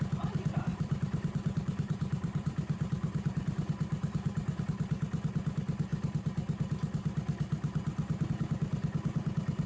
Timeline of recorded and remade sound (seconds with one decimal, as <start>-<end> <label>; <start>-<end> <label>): 0.0-0.7 recorded; 0.7-4.6 remade; 4.6-9.7 recorded